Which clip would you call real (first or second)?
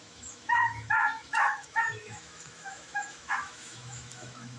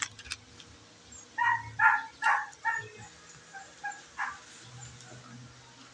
second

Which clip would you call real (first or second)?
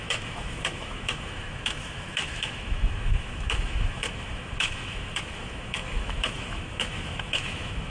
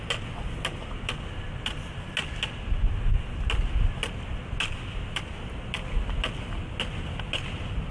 second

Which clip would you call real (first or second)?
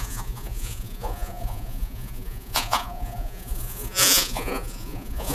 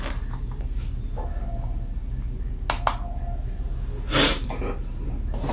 second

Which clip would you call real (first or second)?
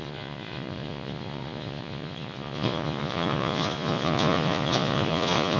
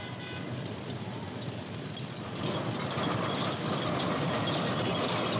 second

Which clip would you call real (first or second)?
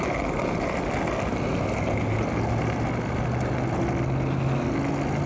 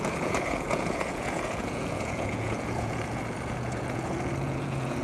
first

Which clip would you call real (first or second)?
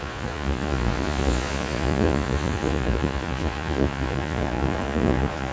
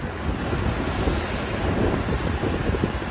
second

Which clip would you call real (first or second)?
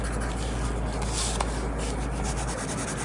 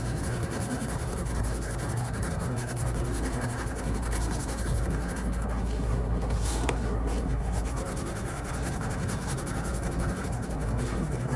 first